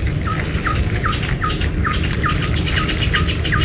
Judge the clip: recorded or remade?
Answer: recorded